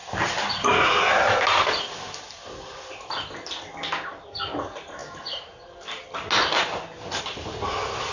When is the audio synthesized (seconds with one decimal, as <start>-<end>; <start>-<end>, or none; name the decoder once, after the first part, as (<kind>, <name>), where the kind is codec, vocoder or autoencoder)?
none